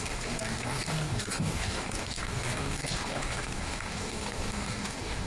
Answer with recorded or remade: remade